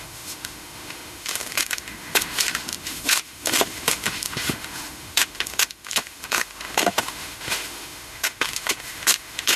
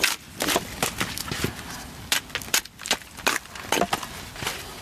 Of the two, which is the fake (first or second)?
first